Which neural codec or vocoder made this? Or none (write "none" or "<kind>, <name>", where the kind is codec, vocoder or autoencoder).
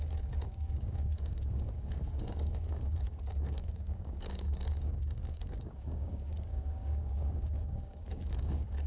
codec, DAC